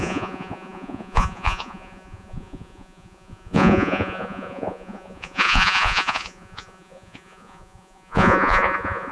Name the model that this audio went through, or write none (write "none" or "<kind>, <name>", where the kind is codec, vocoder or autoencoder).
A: vocoder, Vocos